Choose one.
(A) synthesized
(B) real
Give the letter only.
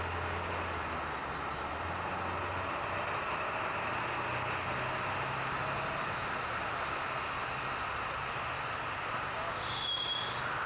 B